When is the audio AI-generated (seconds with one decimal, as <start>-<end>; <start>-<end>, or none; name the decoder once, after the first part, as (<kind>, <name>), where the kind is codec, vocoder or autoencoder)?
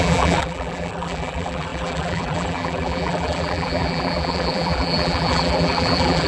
0.0-6.3 (vocoder, BigVGAN v2)